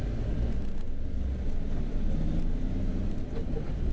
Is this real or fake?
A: real